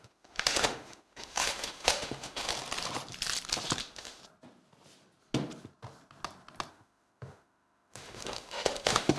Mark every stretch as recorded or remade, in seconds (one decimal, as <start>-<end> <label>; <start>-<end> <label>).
0.0-2.5 remade; 2.5-3.8 recorded; 3.8-4.2 remade; 4.2-6.7 recorded; 6.7-9.2 remade